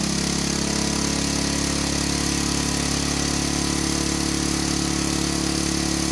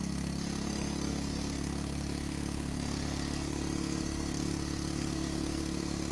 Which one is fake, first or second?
second